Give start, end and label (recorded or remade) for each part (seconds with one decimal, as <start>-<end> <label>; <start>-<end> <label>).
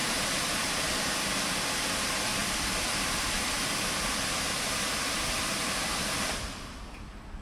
0.0-1.4 remade; 1.4-2.4 recorded; 2.4-6.8 remade; 6.8-7.4 recorded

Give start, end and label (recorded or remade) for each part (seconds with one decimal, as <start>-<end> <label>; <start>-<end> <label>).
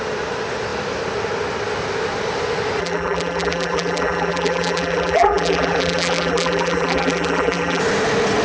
0.0-2.8 recorded; 2.8-7.8 remade; 7.8-8.4 recorded